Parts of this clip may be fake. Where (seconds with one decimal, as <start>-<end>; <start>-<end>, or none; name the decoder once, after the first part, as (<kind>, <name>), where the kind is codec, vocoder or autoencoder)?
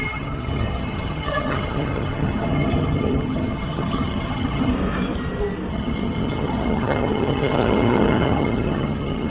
0.0-4.7 (vocoder, HiFi-GAN); 5.7-9.3